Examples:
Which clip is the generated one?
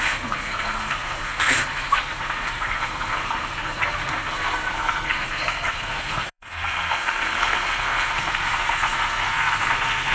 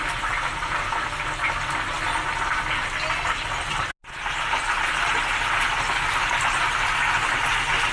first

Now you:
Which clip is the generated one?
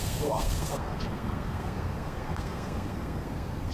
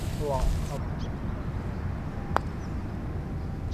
first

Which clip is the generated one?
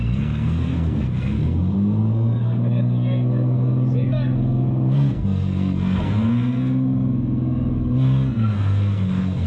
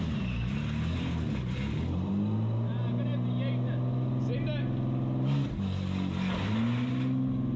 first